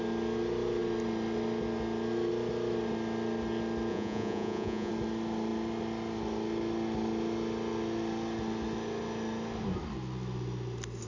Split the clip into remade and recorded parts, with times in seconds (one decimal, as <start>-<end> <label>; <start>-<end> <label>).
0.0-3.9 recorded; 3.9-4.9 remade; 4.9-11.1 recorded